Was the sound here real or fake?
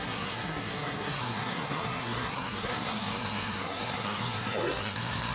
fake